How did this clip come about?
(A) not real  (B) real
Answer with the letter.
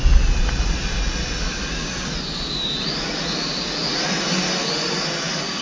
B